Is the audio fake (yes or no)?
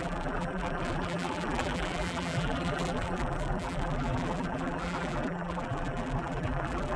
yes